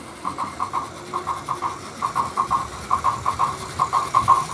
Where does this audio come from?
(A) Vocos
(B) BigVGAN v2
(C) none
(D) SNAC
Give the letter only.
C